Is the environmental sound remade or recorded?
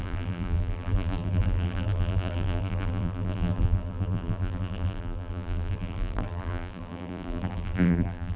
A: remade